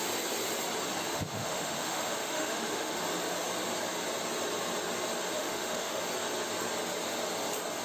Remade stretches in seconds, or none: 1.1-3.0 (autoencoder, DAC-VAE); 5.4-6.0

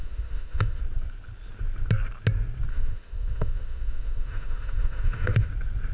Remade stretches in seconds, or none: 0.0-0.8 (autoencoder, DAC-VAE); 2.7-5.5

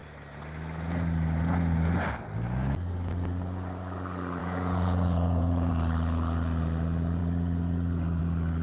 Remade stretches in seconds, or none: 4.4-5.7 (vocoder, Vocos)